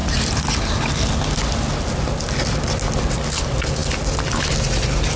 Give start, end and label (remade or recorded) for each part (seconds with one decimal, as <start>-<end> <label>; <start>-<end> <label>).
0.0-5.2 recorded

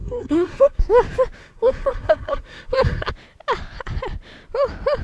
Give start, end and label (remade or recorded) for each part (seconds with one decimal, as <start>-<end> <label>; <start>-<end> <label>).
0.0-0.8 remade; 0.8-1.4 recorded; 1.4-3.1 remade; 3.1-5.0 recorded

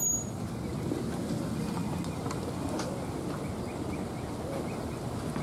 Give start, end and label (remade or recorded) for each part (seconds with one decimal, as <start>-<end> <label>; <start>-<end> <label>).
0.0-5.4 recorded

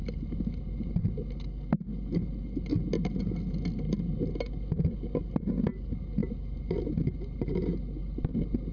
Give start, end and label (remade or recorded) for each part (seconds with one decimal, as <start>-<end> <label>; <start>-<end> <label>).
0.0-8.7 recorded

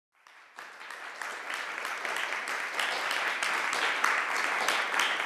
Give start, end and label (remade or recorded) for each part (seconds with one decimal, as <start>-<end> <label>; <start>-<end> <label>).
0.0-5.3 recorded

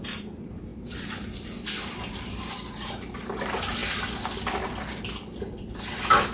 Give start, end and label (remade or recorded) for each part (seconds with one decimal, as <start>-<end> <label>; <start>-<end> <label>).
0.0-6.3 recorded

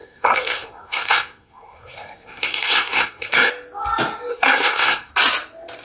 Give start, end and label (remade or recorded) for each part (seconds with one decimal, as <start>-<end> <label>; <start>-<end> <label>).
0.0-3.5 remade; 3.5-4.3 recorded; 4.3-5.1 remade; 5.1-5.8 recorded